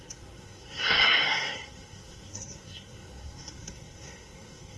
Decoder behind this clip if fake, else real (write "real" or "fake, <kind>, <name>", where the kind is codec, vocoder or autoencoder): fake, codec, SNAC